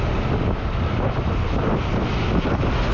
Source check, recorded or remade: recorded